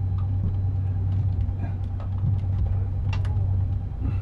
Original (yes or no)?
yes